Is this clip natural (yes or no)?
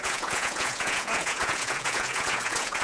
no